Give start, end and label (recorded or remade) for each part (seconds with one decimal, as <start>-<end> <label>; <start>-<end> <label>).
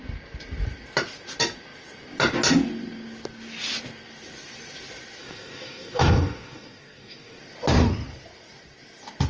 0.0-5.2 recorded; 5.2-7.4 remade; 7.4-9.3 recorded